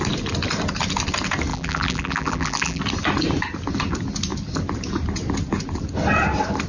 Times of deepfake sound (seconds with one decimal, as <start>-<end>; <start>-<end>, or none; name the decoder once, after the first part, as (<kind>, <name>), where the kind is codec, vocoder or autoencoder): 1.5-2.8 (vocoder, BigVGAN v2)